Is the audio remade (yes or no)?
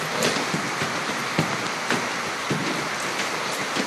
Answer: no